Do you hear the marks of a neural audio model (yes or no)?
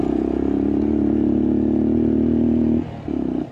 no